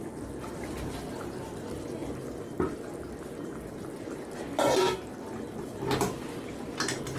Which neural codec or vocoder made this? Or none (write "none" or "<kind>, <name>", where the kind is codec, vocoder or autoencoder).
none